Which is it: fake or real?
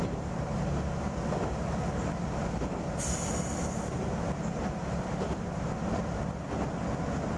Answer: real